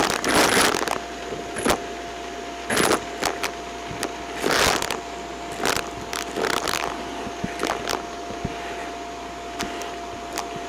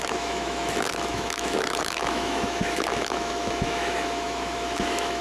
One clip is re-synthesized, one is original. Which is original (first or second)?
first